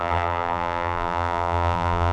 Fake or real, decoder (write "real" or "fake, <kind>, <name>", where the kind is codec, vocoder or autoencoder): fake, vocoder, BigVGAN v2